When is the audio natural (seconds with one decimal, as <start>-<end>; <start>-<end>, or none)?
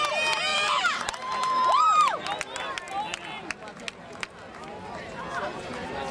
0.0-0.5; 2.2-6.1